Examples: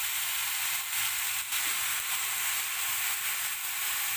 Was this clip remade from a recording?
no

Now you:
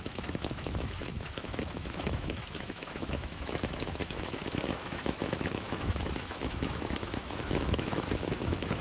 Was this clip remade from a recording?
yes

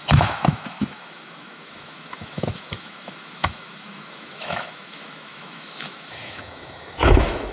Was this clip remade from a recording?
yes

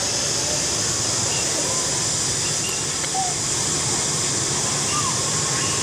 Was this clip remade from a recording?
no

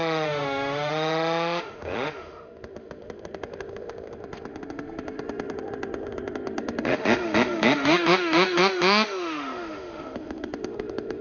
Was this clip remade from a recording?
yes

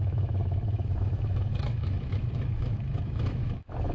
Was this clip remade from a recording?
yes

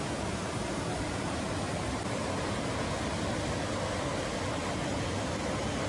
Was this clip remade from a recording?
no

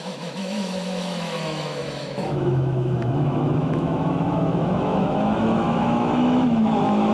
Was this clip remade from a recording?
yes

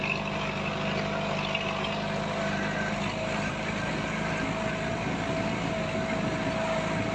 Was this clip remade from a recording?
no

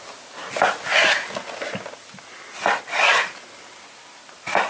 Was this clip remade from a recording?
no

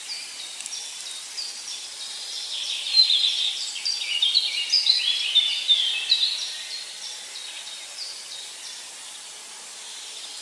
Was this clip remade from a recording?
no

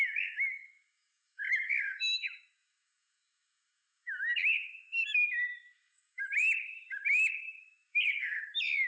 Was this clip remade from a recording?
yes